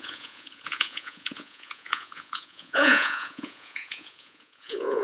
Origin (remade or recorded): remade